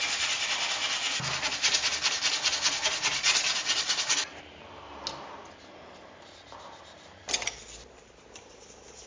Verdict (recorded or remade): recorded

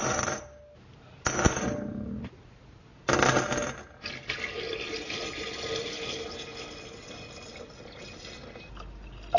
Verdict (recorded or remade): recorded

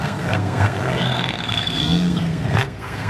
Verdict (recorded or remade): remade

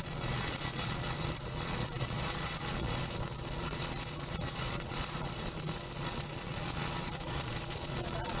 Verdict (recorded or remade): remade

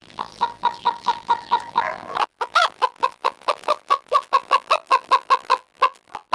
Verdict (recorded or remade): remade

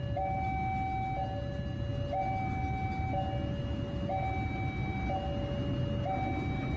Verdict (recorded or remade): recorded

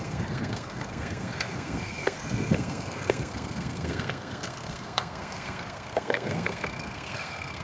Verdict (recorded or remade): remade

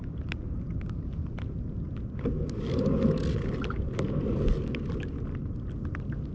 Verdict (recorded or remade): recorded